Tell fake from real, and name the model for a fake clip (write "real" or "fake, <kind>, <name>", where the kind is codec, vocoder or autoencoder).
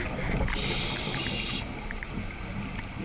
real